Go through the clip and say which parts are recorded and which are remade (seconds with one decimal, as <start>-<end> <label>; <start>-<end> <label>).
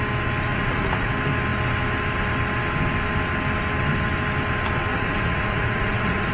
0.0-0.5 recorded; 0.5-1.1 remade; 1.1-4.9 recorded; 4.9-6.3 remade